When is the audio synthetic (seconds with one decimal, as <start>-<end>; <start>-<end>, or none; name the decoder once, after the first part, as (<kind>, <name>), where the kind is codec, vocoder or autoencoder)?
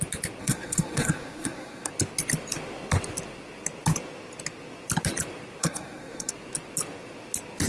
0.4-1.9 (codec, SNAC); 5.6-6.3